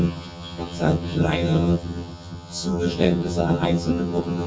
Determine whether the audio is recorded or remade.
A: remade